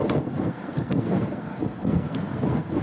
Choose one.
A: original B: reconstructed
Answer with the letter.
B